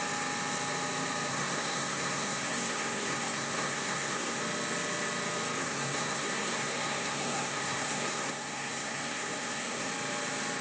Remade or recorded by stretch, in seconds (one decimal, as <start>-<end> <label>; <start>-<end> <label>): 0.0-1.3 recorded; 1.3-4.4 remade; 4.4-5.6 recorded; 5.6-9.9 remade; 9.9-10.6 recorded